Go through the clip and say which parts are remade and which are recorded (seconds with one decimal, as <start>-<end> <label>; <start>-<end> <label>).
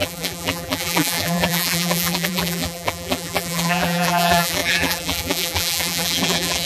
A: 0.0-6.7 remade